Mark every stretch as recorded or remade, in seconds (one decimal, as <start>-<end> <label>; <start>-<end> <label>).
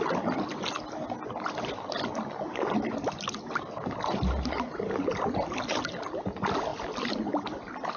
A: 0.0-8.0 recorded